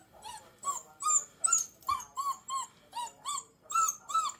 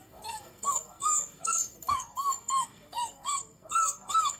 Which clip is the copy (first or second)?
second